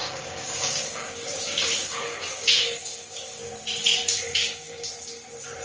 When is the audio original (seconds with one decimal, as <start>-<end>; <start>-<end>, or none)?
3.4-3.9; 4.9-5.6